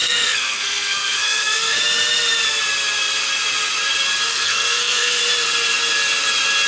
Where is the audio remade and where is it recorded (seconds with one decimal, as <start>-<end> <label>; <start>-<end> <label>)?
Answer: 0.0-1.8 remade; 1.8-4.3 recorded; 4.3-5.2 remade; 5.2-6.7 recorded